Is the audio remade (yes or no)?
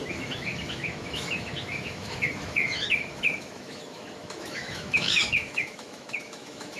yes